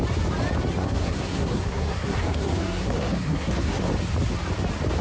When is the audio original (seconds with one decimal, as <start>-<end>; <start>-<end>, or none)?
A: 0.0-0.8; 3.8-5.0